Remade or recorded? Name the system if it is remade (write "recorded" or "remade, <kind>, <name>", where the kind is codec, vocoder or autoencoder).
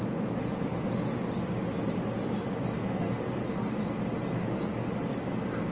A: recorded